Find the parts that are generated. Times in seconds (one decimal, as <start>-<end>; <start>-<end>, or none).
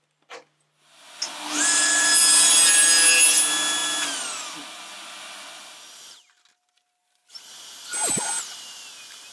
none